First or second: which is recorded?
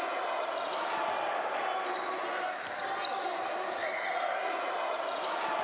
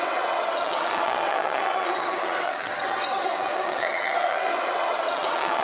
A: first